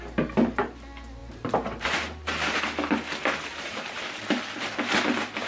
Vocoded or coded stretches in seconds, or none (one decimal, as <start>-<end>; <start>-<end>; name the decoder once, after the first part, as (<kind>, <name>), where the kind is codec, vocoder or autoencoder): 1.2-2.6 (vocoder, BigVGAN v2); 3.5-4.2

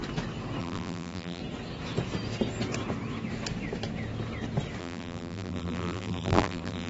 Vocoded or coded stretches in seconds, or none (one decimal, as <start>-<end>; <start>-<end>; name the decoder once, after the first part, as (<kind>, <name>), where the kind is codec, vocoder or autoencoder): 0.6-1.4 (vocoder, BigVGAN v2); 4.8-6.9

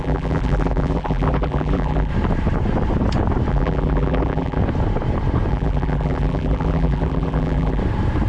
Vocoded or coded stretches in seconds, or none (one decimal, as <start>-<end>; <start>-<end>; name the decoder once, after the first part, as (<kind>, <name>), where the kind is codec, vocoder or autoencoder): 0.0-2.1 (vocoder, BigVGAN v2); 3.5-4.6; 5.5-7.8

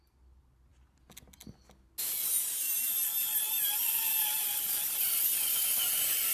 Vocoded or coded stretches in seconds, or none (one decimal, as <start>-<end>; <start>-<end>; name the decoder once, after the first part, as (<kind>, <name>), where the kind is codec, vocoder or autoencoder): none

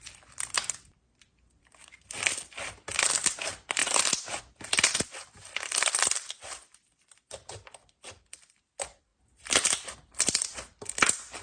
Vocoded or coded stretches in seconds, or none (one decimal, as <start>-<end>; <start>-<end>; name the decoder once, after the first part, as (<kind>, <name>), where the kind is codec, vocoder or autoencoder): 0.0-9.1 (vocoder, BigVGAN v2); 9.9-11.4

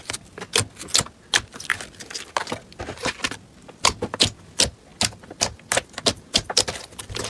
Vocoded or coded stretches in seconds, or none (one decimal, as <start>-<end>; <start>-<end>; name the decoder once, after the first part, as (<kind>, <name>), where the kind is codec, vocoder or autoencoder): none

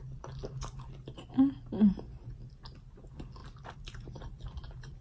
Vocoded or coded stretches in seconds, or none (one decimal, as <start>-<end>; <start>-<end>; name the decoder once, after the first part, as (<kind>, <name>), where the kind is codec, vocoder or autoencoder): none